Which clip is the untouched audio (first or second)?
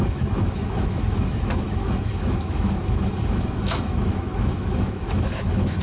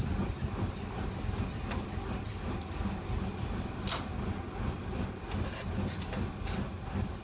second